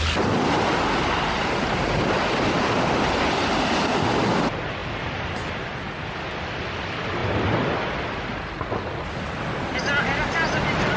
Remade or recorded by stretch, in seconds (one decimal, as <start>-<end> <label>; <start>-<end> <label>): 0.0-11.0 recorded